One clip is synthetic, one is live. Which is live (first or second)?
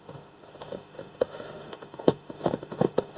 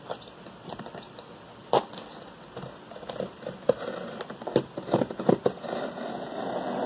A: second